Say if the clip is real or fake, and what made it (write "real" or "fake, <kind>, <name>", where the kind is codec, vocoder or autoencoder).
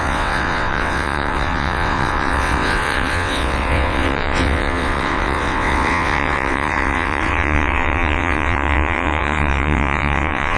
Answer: fake, vocoder, WaveNeXt